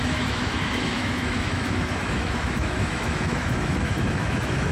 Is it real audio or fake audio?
fake